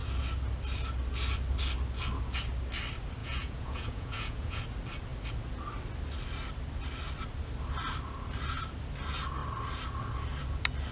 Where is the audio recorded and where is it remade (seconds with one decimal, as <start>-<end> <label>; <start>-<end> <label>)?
0.0-3.2 recorded; 3.2-4.6 remade; 4.6-10.9 recorded